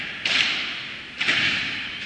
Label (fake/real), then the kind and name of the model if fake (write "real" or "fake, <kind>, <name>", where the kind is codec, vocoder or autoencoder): real